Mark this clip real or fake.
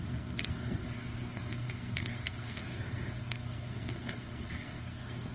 fake